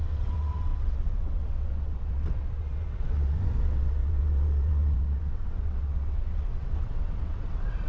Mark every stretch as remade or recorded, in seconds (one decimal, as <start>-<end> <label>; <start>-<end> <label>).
0.0-7.9 remade